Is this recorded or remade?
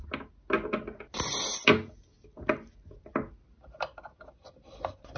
recorded